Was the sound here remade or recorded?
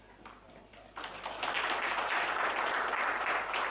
remade